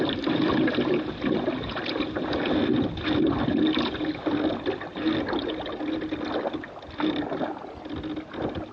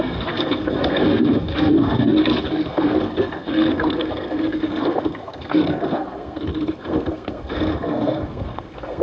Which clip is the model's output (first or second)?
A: second